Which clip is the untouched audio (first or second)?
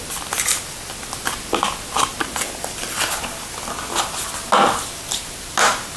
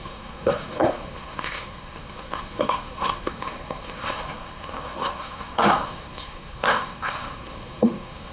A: first